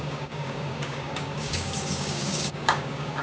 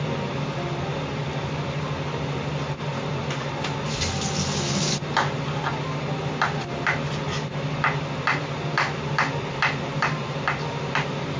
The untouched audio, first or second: second